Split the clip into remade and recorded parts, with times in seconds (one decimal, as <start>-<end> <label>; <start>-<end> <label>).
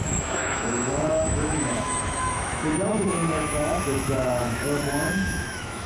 0.0-5.9 remade